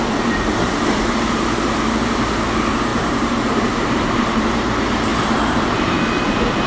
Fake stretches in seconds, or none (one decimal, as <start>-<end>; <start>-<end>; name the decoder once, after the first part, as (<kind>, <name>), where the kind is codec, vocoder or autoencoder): 2.9-4.4 (vocoder, BigVGAN v2); 5.1-6.7